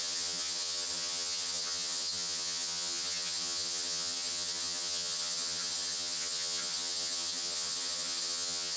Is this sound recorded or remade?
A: remade